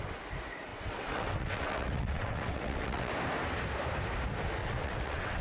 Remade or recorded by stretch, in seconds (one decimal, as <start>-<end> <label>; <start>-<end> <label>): 0.0-0.7 recorded; 0.7-3.1 remade; 3.1-4.6 recorded; 4.6-5.4 remade